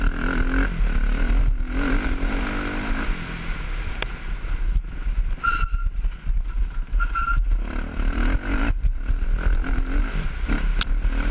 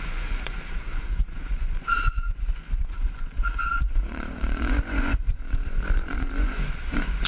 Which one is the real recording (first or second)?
first